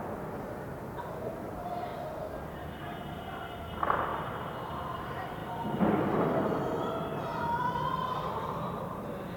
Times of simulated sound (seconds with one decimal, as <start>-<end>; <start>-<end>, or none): 4.1-5.0; 7.3-9.0